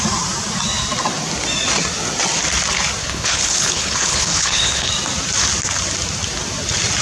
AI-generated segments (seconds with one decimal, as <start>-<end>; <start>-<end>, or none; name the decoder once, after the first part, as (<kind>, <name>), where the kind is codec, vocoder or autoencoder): 3.0-4.9 (codec, HILCodec)